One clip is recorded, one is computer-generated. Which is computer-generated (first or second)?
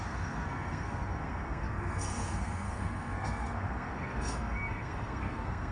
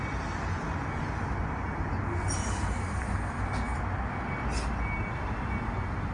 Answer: first